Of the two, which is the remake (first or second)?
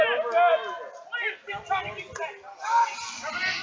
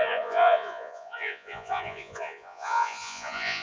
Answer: second